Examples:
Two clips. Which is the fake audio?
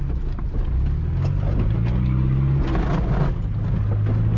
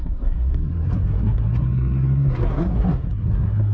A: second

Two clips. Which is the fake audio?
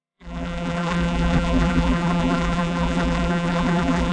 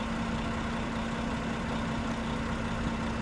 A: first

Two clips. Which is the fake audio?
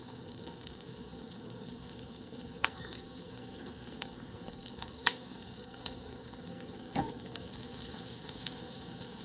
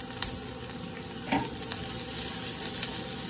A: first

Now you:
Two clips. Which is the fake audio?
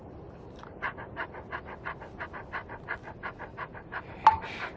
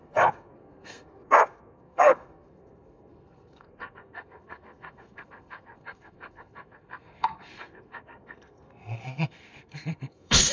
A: second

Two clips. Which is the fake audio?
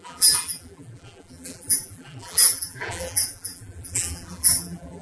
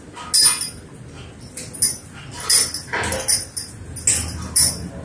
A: first